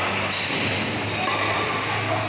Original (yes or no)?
yes